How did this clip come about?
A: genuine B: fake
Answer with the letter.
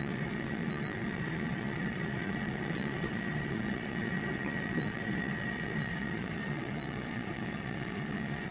B